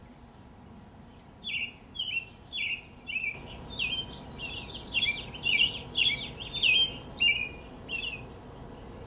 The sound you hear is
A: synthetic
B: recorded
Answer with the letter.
B